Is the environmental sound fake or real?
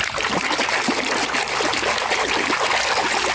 real